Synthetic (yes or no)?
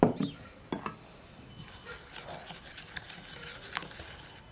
no